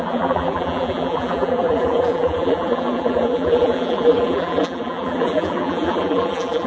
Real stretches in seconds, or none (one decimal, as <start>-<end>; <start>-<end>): none